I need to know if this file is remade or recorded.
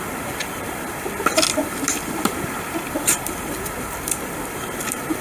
recorded